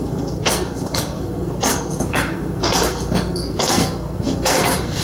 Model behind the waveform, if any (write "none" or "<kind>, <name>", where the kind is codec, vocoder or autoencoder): codec, SNAC